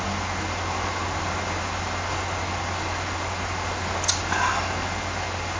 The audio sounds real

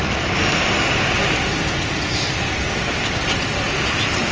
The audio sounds real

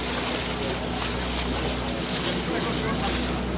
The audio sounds real